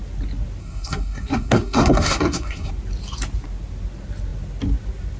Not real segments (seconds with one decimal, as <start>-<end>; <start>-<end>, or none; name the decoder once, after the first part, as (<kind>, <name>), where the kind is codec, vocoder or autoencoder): 0.6-2.7 (codec, SNAC)